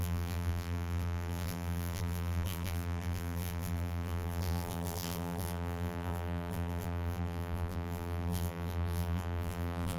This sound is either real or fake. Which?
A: fake